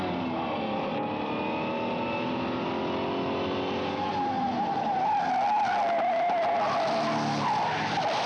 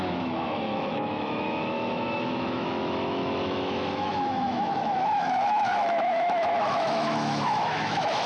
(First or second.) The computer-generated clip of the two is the second